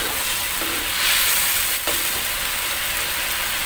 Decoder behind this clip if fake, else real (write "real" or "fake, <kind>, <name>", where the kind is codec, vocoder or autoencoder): fake, vocoder, BigVGAN v2